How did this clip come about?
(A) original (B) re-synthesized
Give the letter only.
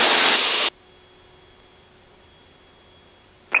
A